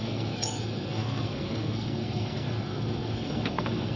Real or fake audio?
fake